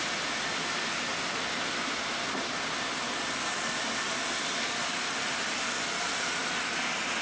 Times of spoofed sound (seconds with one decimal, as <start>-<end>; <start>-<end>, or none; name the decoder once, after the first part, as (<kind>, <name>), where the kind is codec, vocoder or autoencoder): none